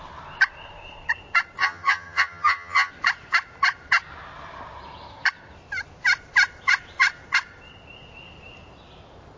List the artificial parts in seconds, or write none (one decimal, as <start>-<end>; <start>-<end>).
1.6-2.9